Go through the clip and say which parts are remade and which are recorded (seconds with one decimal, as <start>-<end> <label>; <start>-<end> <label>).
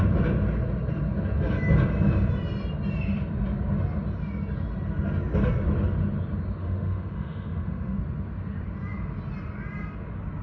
0.0-6.6 recorded; 6.6-8.0 remade; 8.0-10.4 recorded